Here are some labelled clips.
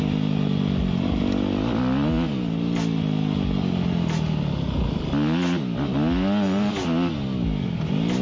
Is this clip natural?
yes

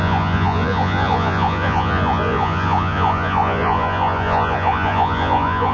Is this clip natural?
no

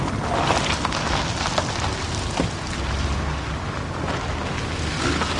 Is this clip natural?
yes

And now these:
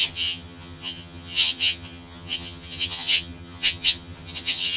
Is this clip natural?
no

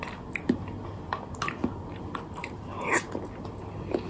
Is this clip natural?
yes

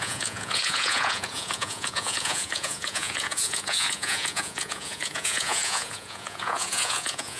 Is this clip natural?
no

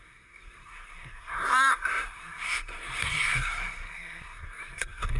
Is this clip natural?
no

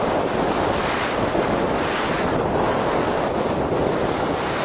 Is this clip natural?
yes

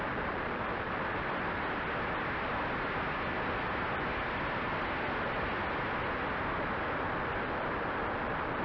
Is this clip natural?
yes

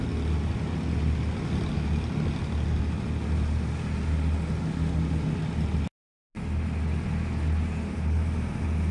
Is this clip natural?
yes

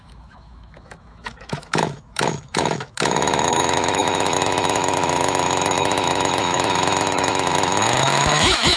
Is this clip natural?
no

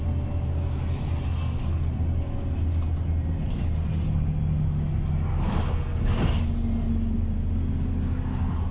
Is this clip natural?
yes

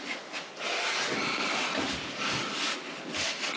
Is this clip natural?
yes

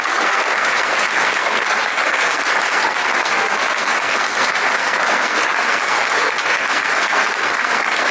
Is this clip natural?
no